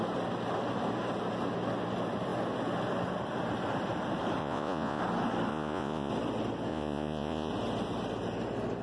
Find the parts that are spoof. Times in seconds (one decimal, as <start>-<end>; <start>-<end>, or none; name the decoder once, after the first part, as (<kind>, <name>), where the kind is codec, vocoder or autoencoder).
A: 4.4-5.0 (vocoder, Vocos); 5.5-6.1; 6.7-7.5